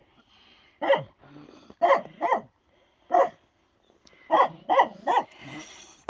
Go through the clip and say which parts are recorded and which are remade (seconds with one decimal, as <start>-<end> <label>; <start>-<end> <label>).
0.0-1.2 recorded; 1.2-4.1 remade; 4.1-4.7 recorded; 4.7-5.4 remade; 5.4-6.1 recorded